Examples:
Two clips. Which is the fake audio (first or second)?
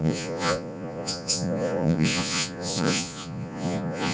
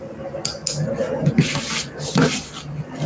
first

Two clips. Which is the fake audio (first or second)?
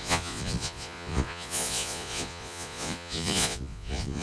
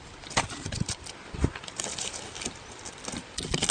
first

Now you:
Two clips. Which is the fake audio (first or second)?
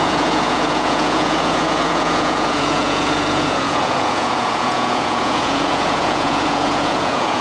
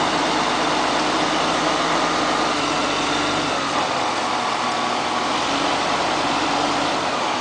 first